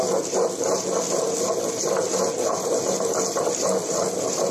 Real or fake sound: real